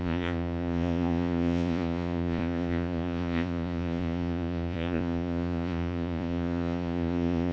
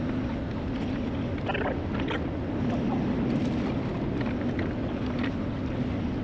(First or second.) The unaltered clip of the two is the second